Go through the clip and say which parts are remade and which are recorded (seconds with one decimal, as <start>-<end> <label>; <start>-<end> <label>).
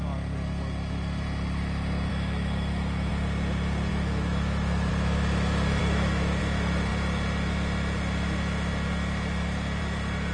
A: 0.0-2.1 recorded; 2.1-3.1 remade; 3.1-3.9 recorded; 3.9-4.9 remade; 4.9-5.8 recorded; 5.8-6.4 remade; 6.4-10.3 recorded